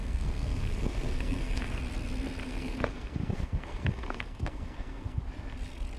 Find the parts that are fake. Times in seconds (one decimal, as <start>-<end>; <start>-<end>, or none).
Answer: 0.0-1.8; 2.4-5.2